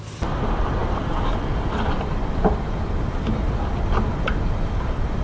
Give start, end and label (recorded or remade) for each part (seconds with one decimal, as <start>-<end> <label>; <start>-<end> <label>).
0.0-5.2 recorded